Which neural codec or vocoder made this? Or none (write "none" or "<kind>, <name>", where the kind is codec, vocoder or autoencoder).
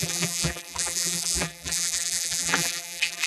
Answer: vocoder, BigVGAN v2